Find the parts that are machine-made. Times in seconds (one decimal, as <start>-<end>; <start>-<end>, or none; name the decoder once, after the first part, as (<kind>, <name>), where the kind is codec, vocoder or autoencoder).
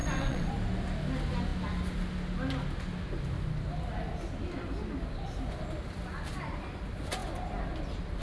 0.0-0.5 (vocoder, WaveNeXt)